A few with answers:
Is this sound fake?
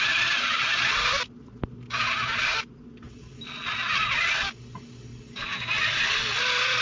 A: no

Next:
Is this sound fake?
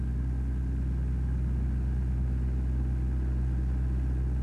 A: no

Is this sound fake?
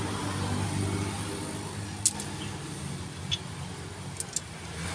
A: no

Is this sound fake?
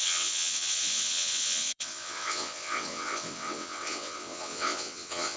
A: yes